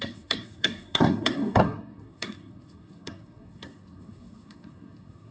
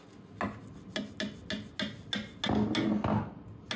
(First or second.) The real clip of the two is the second